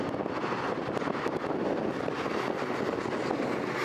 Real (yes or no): yes